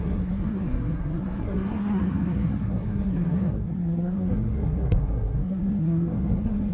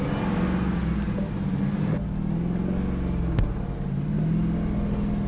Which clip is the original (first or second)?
second